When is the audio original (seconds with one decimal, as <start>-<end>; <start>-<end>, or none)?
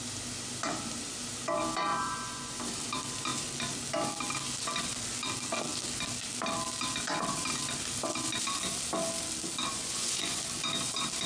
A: 0.0-1.9; 2.5-9.7; 10.4-11.3